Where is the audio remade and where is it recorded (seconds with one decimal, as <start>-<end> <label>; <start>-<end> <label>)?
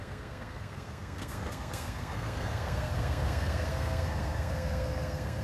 0.0-5.4 remade